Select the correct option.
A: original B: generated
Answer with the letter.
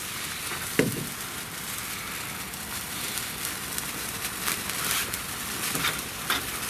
B